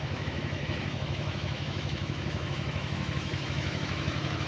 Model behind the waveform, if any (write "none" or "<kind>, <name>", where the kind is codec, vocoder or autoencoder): autoencoder, DAC-VAE